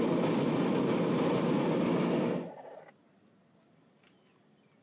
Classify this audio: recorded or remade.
recorded